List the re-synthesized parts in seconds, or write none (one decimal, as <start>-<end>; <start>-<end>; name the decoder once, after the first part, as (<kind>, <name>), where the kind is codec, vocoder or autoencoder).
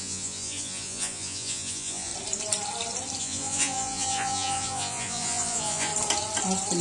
0.0-2.1 (vocoder, Vocos); 3.2-5.9